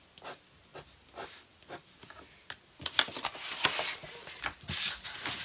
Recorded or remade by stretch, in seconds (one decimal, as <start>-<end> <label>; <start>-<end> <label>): 0.0-5.4 recorded